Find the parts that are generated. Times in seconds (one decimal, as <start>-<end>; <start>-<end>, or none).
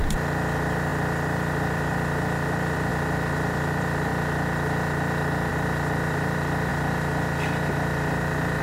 0.0-4.1; 5.5-8.6